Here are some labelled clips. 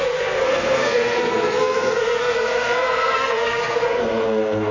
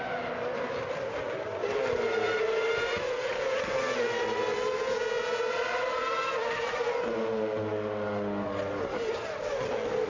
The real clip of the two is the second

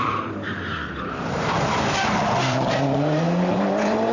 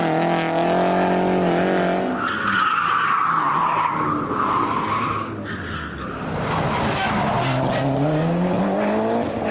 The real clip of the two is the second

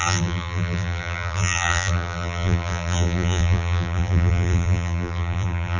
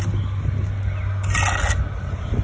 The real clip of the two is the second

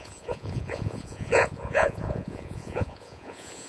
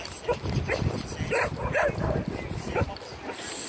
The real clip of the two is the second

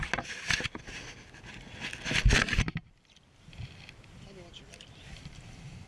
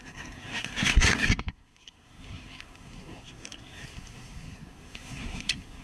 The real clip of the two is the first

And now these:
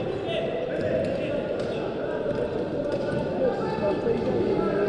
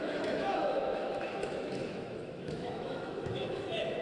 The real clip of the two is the first